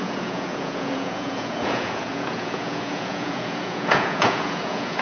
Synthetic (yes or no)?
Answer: yes